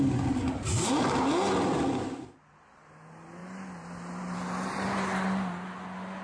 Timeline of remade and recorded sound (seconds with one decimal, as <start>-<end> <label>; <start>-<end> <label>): 0.0-6.2 recorded

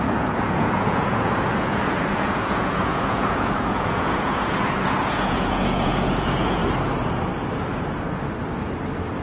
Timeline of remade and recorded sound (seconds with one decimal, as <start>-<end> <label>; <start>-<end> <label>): 0.0-6.6 remade; 6.6-9.2 recorded

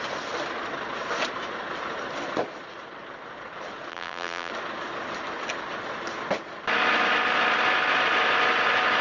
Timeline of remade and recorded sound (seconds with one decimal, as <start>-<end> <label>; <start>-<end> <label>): 0.0-3.9 recorded; 3.9-4.5 remade; 4.5-9.0 recorded

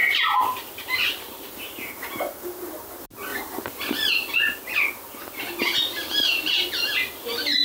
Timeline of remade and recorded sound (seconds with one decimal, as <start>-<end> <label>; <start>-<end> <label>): 0.0-1.5 remade; 1.5-3.3 recorded; 3.3-4.1 remade; 4.1-7.6 recorded

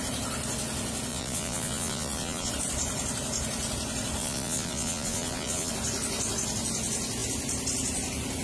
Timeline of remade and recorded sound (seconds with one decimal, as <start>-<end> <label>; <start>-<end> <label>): 0.0-1.1 recorded; 1.1-2.5 remade; 2.5-4.2 recorded; 4.2-5.7 remade; 5.7-8.4 recorded

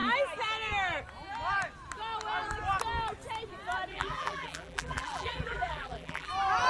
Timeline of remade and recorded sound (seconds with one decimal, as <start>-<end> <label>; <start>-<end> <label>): 0.0-3.9 recorded; 3.9-6.3 remade; 6.3-6.7 recorded

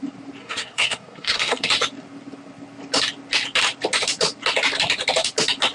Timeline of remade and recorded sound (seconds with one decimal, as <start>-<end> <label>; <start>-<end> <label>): 0.0-0.4 recorded; 0.4-1.7 remade; 1.7-5.7 recorded

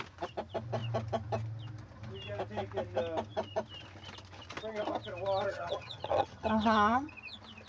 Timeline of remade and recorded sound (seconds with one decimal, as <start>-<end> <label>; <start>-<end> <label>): 0.0-5.5 recorded; 5.5-7.1 remade; 7.1-7.7 recorded